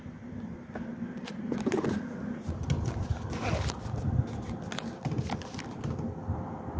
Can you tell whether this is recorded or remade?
recorded